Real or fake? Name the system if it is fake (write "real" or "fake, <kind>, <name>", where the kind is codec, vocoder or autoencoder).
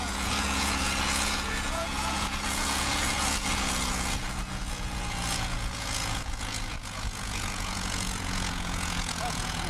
fake, vocoder, Vocos